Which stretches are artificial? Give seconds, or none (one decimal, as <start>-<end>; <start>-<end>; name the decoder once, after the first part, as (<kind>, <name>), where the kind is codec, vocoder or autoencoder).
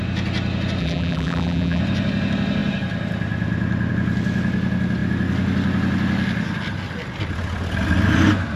0.8-1.8 (vocoder, BigVGAN v2)